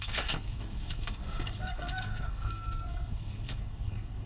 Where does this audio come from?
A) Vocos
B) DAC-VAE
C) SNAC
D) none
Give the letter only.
C